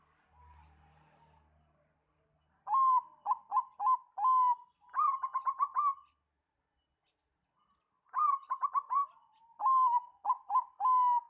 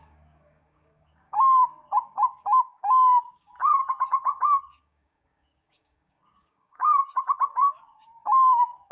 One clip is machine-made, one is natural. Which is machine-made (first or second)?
second